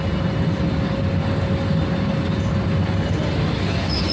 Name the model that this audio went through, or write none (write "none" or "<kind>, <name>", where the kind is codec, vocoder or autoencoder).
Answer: none